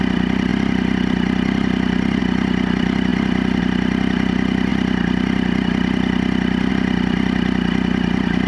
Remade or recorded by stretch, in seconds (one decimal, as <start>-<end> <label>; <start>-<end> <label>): 0.0-8.5 recorded

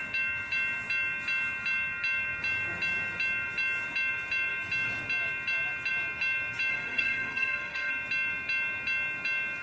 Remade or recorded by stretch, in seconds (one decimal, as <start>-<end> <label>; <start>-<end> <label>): 0.0-6.7 recorded; 6.7-7.9 remade; 7.9-9.6 recorded